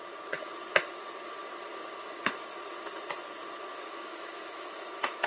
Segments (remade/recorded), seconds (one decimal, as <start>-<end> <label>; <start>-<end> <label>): 0.0-3.7 recorded; 3.7-5.3 remade